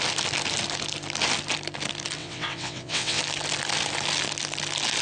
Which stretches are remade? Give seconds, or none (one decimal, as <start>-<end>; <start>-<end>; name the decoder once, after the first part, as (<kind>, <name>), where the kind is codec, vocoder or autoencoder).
2.2-3.2 (vocoder, WaveNeXt)